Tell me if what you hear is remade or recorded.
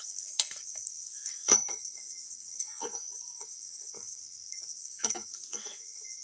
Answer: remade